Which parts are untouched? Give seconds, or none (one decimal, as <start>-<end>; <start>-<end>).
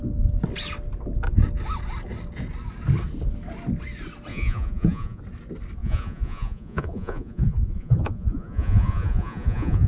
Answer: 0.0-4.3; 5.2-5.8